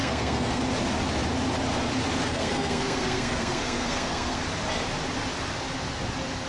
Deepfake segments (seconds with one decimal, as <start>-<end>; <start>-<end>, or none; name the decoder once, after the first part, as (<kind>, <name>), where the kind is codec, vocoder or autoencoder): 0.0-0.6 (codec, SNAC); 2.3-4.4